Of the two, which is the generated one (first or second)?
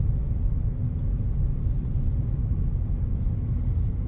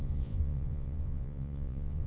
second